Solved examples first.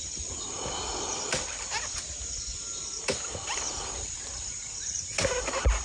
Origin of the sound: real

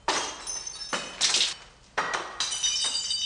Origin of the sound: real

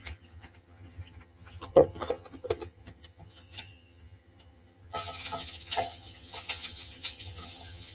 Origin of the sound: fake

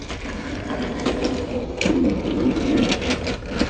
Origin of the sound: real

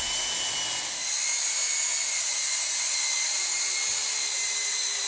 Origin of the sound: real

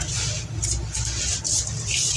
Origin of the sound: real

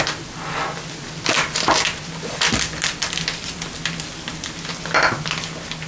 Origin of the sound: real